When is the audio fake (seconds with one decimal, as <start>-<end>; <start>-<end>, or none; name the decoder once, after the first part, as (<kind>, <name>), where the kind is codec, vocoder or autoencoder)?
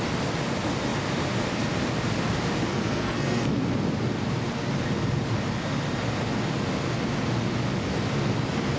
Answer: 2.7-3.5 (codec, SNAC)